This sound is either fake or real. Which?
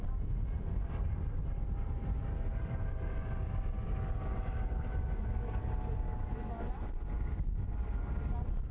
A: real